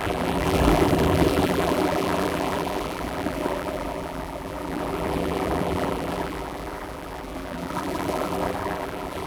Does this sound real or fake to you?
fake